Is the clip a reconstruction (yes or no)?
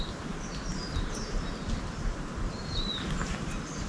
no